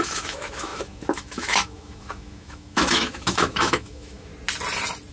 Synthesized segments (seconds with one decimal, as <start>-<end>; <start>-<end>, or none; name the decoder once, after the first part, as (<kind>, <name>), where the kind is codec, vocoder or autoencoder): 0.0-4.3 (autoencoder, DAC-VAE)